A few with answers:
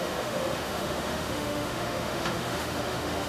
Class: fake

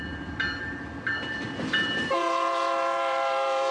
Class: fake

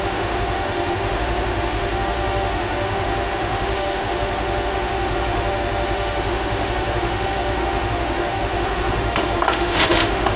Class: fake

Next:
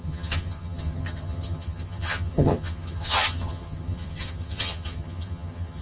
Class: fake